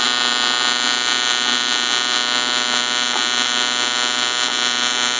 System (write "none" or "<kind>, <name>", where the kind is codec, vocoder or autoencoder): none